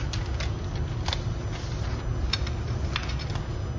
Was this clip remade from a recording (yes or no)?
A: no